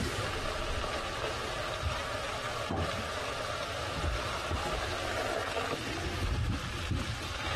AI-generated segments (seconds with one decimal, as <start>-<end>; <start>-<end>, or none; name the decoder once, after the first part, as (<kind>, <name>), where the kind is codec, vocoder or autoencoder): none